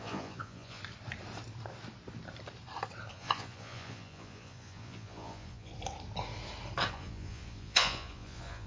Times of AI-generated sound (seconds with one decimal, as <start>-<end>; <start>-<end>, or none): 0.0-0.8; 3.1-5.7; 6.9-8.7